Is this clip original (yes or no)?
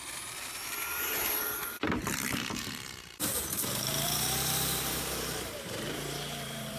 no